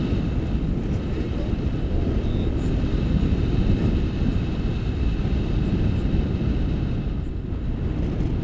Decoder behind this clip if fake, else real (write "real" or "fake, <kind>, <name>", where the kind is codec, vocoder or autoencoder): real